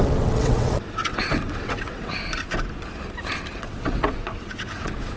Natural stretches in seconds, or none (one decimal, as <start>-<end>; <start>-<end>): 2.1-3.5